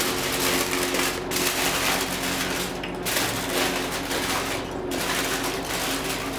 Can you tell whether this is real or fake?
real